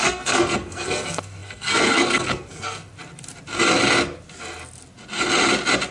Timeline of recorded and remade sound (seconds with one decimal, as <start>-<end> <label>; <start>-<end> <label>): 0.0-2.9 remade; 2.9-5.9 recorded